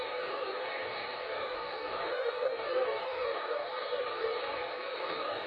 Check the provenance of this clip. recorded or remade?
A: remade